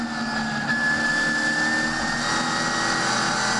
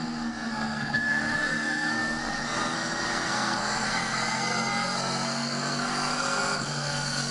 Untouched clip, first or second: first